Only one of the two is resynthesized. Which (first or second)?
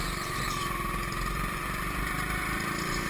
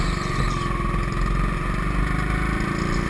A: first